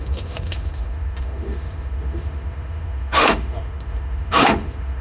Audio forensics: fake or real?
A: fake